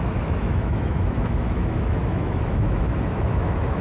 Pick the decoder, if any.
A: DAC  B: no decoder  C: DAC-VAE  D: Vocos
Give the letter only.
C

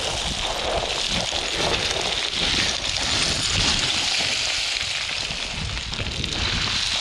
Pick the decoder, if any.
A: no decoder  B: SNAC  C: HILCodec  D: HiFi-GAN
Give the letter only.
A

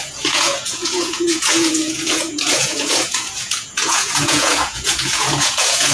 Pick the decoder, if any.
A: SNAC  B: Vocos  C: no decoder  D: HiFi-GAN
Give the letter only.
B